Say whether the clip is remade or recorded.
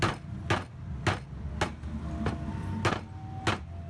recorded